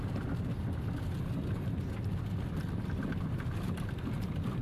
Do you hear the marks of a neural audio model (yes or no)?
no